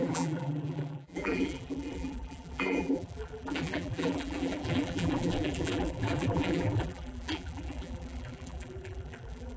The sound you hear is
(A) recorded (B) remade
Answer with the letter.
B